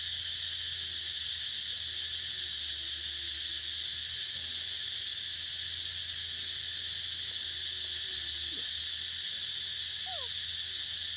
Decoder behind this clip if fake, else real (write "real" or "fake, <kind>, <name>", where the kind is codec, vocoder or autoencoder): real